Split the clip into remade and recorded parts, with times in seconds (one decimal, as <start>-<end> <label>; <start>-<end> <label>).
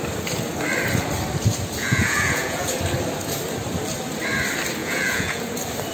0.0-1.8 recorded; 1.8-2.7 remade; 2.7-4.8 recorded; 4.8-5.4 remade; 5.4-5.9 recorded